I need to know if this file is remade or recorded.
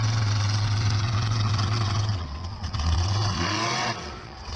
remade